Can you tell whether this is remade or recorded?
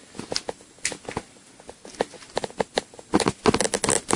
recorded